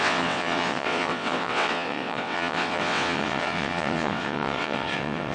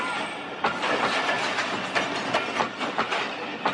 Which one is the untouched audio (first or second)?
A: second